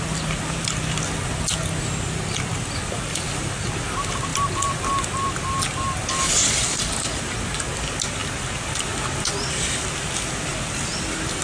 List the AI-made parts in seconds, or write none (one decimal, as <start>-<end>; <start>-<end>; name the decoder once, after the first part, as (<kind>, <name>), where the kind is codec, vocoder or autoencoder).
none